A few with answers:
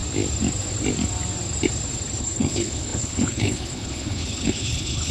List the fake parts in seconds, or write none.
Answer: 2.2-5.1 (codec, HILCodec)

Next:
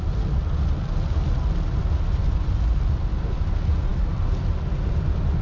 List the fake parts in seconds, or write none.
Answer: none